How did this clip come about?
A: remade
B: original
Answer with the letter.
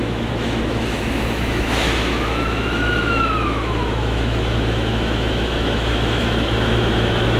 A